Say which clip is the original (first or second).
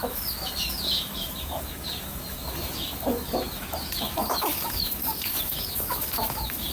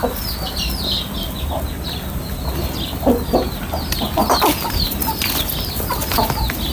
second